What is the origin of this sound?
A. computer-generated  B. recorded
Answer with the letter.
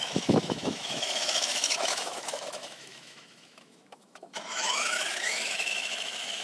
A